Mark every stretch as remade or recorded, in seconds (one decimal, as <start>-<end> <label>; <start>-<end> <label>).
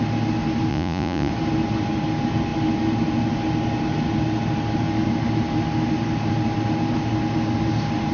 0.0-0.7 recorded; 0.7-1.3 remade; 1.3-8.1 recorded